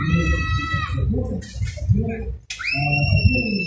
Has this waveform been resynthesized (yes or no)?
no